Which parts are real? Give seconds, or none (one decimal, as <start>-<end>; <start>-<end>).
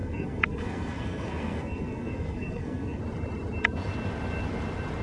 3.0-5.0